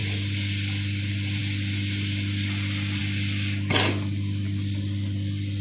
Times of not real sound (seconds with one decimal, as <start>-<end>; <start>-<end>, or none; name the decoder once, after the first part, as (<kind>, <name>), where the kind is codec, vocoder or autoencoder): none